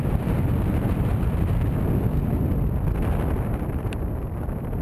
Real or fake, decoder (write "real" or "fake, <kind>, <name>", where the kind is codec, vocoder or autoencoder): real